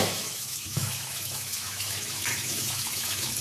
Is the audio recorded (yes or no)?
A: no